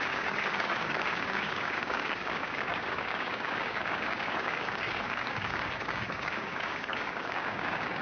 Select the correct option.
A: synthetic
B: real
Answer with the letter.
A